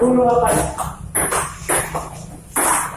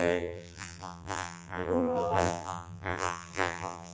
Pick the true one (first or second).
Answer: first